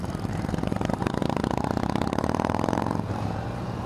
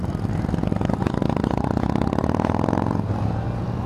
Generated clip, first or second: first